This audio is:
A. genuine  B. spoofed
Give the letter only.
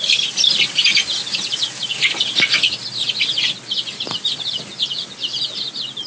A